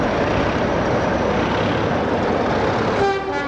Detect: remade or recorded recorded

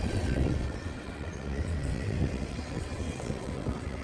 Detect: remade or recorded remade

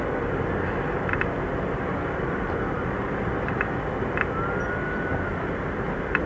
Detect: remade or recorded recorded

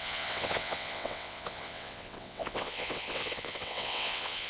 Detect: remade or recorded remade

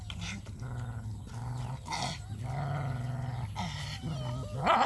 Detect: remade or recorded recorded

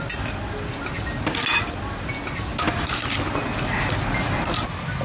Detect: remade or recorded recorded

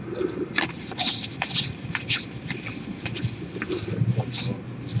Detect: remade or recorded recorded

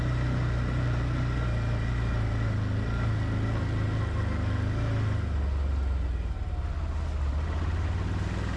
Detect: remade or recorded recorded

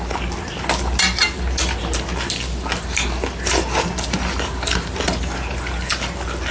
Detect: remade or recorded recorded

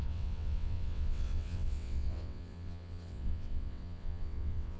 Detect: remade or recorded remade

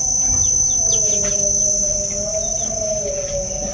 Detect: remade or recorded recorded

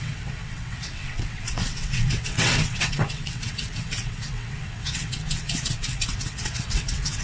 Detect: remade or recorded remade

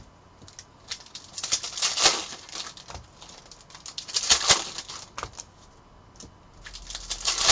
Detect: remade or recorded recorded